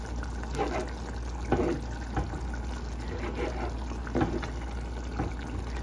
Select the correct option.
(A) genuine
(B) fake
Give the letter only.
A